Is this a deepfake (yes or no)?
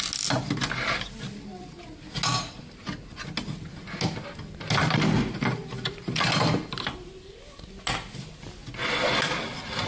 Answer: no